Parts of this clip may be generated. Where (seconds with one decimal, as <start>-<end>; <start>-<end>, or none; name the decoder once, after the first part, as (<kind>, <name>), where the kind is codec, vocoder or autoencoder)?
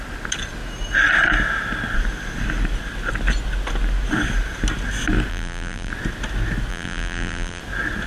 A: 5.3-5.9 (vocoder, BigVGAN v2); 6.7-7.6